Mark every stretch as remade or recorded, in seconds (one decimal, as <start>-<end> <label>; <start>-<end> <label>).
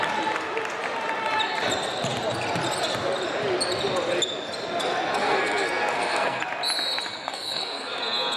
0.0-5.2 recorded; 5.2-6.4 remade; 6.4-7.1 recorded; 7.1-8.0 remade; 8.0-8.4 recorded